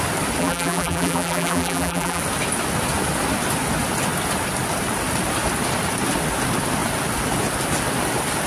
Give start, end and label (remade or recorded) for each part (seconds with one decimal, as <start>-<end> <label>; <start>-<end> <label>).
0.0-0.4 recorded; 0.4-2.2 remade; 2.2-8.5 recorded